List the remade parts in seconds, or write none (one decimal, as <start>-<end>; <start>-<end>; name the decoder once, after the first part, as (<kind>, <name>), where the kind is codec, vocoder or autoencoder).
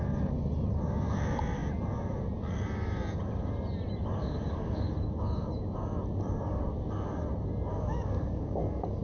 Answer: 4.2-4.9 (codec, DAC); 7.7-9.0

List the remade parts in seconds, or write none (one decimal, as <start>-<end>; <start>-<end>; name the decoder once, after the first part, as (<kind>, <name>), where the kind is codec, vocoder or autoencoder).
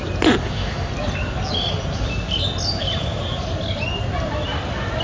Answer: 0.4-0.9 (autoencoder, DAC-VAE)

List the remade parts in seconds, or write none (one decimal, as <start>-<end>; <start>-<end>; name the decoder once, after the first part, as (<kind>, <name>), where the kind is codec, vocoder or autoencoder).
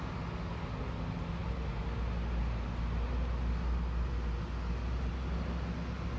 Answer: none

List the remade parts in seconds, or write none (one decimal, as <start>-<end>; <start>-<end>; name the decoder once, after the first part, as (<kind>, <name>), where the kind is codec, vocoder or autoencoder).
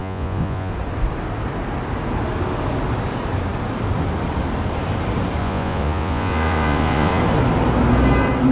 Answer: 0.0-0.7 (vocoder, Vocos); 5.4-7.2